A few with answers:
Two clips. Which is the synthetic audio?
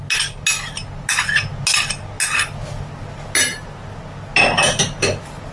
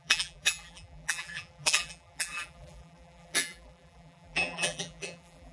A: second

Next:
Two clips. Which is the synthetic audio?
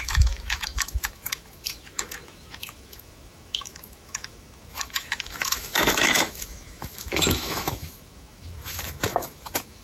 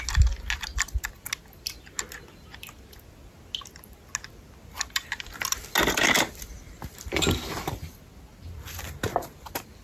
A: first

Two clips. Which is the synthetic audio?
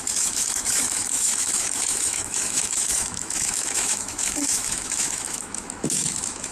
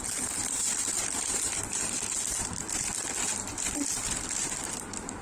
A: first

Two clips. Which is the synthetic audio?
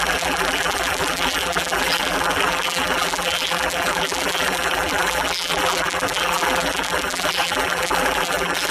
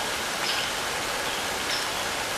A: first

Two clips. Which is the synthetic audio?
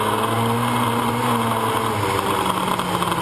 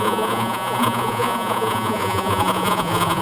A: second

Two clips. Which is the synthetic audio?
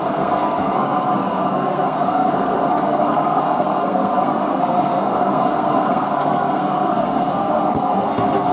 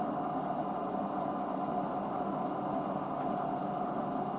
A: first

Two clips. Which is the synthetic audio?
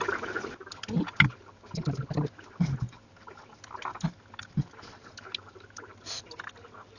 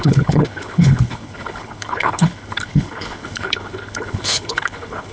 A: second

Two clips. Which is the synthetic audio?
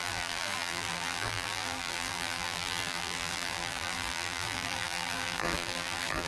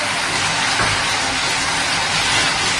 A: first